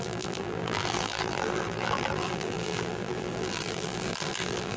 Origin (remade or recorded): remade